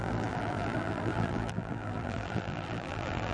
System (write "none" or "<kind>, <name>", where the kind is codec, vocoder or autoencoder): vocoder, BigVGAN v2